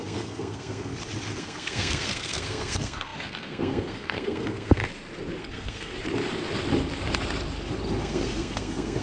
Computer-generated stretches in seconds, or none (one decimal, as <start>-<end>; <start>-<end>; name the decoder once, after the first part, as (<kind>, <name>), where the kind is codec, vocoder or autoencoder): 0.0-0.9 (codec, SNAC); 1.4-4.8; 5.4-5.9; 8.0-9.0